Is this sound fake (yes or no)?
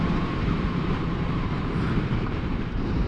yes